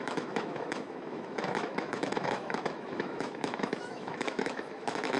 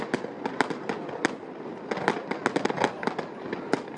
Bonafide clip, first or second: second